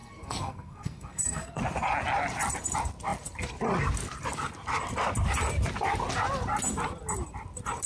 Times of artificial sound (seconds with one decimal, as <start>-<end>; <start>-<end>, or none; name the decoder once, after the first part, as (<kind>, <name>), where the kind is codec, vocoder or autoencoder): 0.0-1.6 (codec, SNAC)

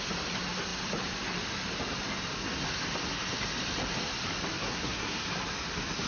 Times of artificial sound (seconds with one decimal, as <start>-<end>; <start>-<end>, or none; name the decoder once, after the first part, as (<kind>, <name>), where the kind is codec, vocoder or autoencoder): 4.6-5.2 (codec, SNAC)

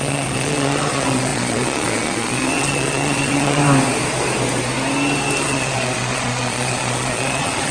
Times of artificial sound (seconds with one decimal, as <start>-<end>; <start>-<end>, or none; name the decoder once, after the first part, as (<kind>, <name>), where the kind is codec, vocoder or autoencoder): 0.0-3.6 (vocoder, Vocos); 5.4-7.7

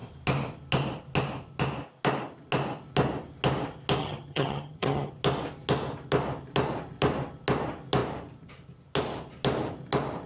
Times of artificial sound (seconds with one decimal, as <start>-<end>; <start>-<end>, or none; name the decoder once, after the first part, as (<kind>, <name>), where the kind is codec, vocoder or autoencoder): 4.0-5.1 (vocoder, HiFi-GAN)

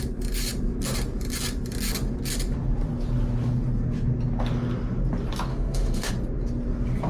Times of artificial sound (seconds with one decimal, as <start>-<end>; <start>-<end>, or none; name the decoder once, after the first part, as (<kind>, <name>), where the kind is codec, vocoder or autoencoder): 5.5-6.1 (autoencoder, DAC-VAE)